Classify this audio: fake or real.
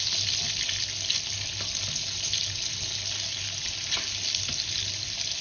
real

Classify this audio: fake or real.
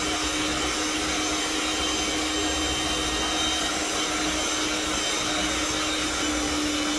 real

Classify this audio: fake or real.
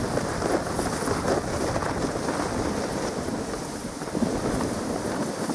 real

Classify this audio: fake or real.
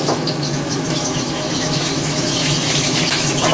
fake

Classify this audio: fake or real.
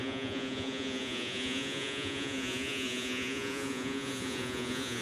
fake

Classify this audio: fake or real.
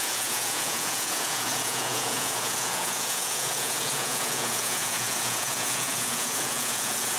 fake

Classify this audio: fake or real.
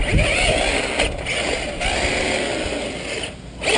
real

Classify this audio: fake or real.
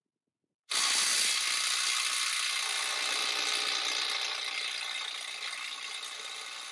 real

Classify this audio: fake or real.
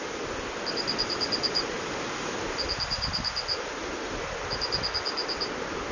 real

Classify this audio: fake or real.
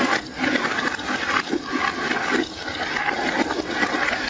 real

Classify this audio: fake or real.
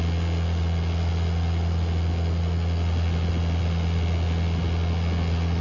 real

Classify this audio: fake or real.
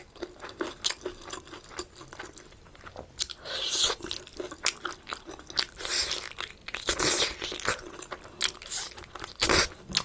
real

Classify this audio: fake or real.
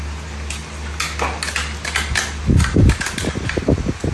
real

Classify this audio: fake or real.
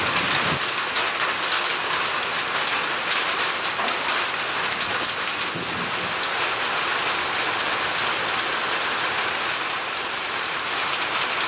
real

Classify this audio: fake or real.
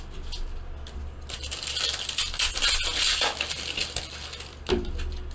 real